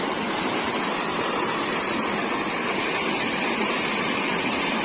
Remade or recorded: recorded